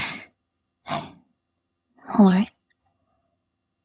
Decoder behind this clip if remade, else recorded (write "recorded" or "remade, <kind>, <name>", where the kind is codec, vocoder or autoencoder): remade, vocoder, HiFi-GAN